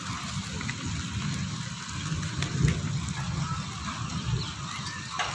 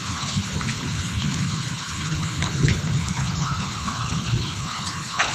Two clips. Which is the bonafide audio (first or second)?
first